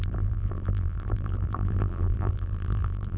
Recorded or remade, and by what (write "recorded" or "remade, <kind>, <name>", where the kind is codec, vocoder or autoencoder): remade, vocoder, BigVGAN v2